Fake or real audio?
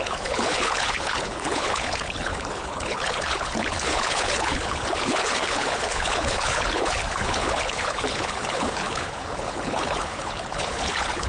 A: fake